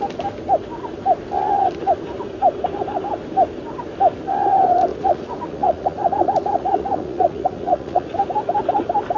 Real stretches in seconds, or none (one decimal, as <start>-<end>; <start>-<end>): 0.0-4.9; 8.3-9.2